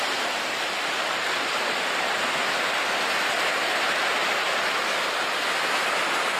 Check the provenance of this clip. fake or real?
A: real